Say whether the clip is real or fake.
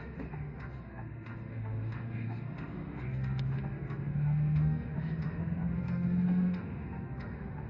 fake